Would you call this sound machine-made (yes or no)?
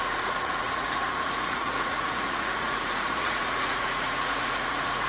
yes